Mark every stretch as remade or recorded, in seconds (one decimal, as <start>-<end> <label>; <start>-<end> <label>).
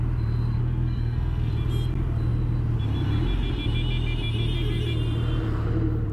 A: 0.0-0.6 recorded; 0.6-1.5 remade; 1.5-6.1 recorded